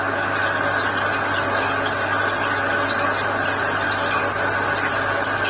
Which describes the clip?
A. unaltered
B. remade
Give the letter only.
A